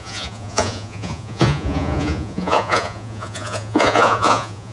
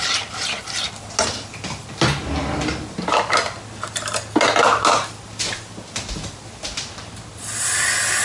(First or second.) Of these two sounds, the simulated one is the first